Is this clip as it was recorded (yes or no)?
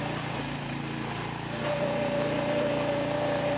no